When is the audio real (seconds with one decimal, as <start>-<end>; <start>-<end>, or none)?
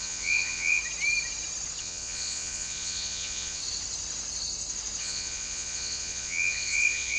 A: 0.8-1.8; 3.6-5.0